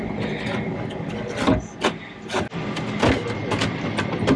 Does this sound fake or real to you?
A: real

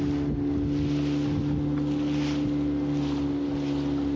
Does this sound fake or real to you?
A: real